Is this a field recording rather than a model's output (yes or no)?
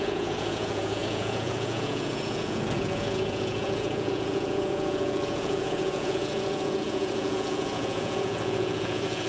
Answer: no